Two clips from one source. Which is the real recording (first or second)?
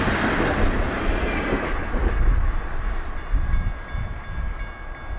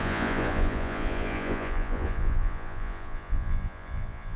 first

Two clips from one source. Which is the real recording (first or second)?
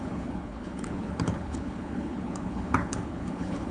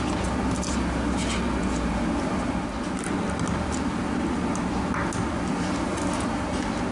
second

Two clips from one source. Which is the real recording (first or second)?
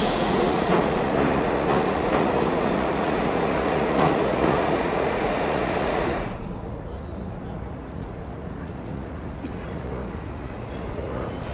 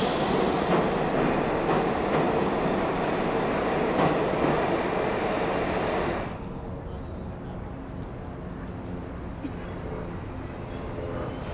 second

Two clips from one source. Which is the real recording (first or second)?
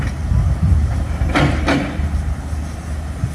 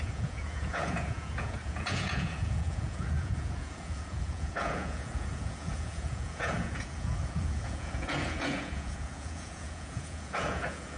first